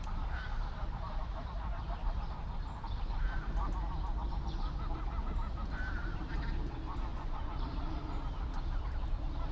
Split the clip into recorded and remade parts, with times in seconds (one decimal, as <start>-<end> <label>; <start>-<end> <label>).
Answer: 0.0-7.1 recorded; 7.1-7.6 remade; 7.6-9.5 recorded